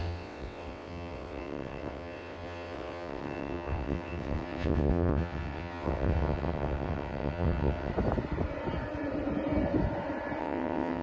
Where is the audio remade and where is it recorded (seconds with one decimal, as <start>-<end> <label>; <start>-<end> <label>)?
0.0-7.9 remade; 7.9-10.4 recorded; 10.4-11.0 remade